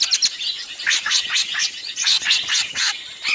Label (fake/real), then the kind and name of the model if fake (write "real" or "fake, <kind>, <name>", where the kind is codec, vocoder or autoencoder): real